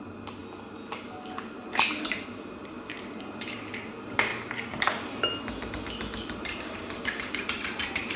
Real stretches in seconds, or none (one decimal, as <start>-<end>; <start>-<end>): 0.4-2.0; 4.3-5.7